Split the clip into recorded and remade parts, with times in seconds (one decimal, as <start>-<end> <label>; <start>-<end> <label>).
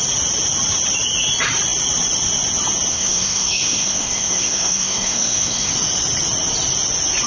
0.0-2.9 recorded; 2.9-5.7 remade; 5.7-7.3 recorded